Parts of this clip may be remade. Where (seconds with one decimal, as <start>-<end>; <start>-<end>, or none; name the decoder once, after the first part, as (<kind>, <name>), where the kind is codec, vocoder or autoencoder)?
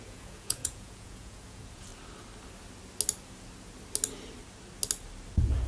0.0-1.9 (vocoder, Vocos); 5.3-5.7